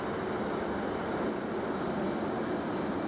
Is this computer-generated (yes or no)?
no